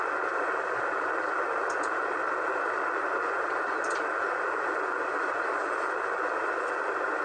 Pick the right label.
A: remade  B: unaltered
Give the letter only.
B